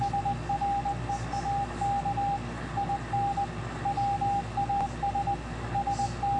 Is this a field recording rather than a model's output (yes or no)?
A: yes